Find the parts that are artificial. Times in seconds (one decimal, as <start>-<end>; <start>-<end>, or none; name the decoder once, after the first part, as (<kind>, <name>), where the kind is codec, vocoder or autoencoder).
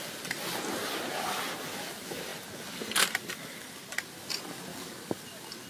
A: 4.7-5.2 (codec, DAC)